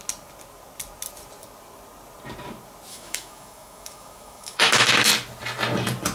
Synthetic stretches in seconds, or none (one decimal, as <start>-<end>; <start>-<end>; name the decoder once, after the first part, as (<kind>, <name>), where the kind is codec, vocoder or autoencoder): 2.9-5.1 (autoencoder, DAC-VAE)